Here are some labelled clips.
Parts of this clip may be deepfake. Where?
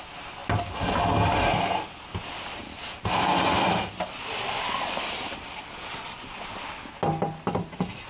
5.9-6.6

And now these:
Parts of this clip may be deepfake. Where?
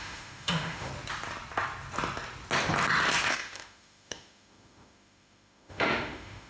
0.0-0.9; 3.3-6.5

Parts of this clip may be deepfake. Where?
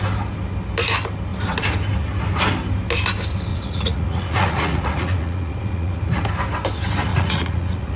3.5-6.2; 7.1-8.0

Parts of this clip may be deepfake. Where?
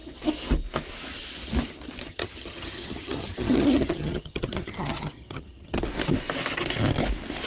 2.1-5.8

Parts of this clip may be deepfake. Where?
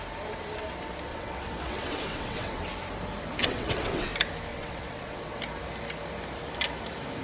1.1-2.6; 3.4-4.1; 4.5-5.4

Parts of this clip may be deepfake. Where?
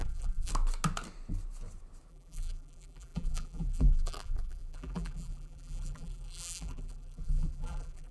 0.0-0.5; 2.1-8.1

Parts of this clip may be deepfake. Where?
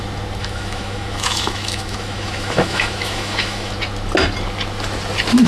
0.4-3.7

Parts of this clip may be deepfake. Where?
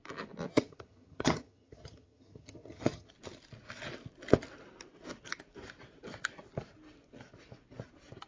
0.5-3.1